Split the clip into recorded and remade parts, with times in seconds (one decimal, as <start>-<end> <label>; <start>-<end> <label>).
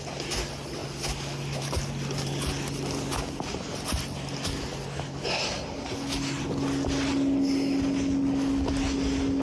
0.0-9.4 recorded